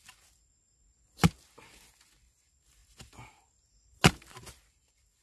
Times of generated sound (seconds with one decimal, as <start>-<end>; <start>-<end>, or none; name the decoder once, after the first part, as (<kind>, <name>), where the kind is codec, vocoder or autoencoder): none